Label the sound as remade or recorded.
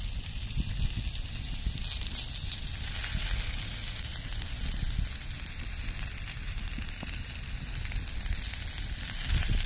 recorded